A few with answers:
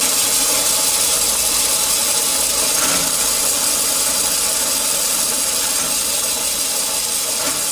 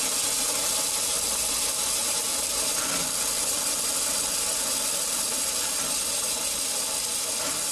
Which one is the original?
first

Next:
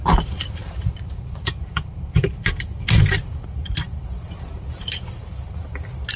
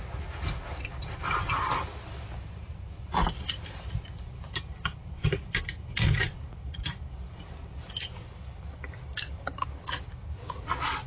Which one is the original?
second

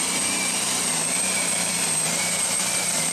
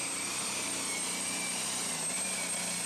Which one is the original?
second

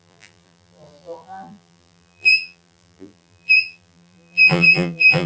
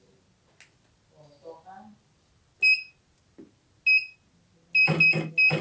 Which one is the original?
second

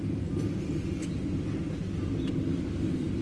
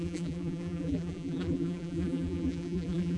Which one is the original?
first